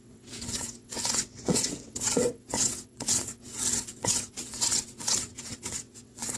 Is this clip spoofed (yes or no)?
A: yes